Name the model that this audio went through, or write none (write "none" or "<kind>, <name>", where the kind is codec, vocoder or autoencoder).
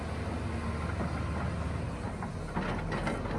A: none